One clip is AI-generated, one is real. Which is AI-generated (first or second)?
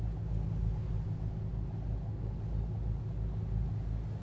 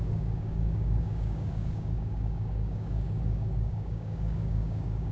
second